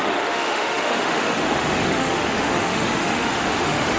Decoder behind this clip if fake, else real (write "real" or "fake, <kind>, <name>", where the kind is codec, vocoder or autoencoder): fake, autoencoder, DAC-VAE